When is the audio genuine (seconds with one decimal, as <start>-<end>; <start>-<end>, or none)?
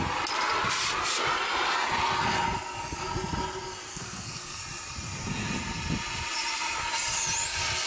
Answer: 0.0-3.9; 4.6-7.9